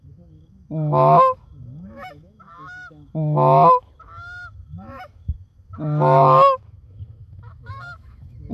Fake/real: fake